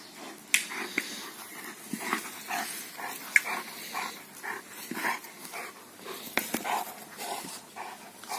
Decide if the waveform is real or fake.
real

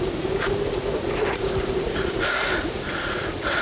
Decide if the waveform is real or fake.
fake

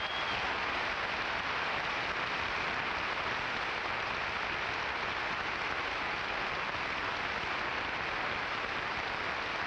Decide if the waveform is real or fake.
real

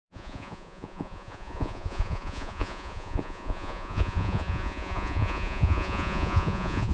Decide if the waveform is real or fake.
fake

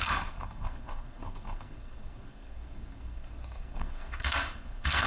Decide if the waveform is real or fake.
fake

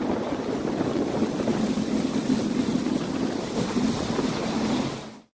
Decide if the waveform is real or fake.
real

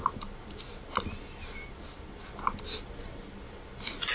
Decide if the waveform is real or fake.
real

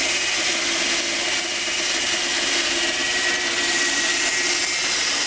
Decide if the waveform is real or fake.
real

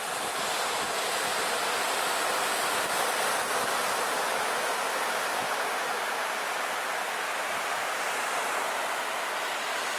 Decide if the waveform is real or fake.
real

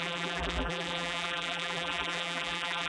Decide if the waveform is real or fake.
fake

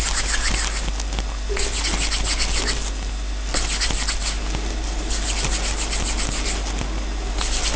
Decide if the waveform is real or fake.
real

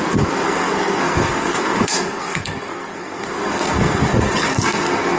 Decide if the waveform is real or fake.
fake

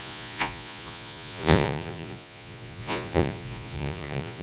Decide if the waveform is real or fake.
fake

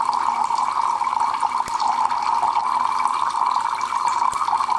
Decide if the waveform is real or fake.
real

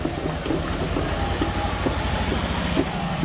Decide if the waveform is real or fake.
real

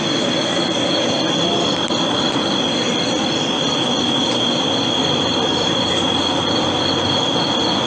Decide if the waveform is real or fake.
real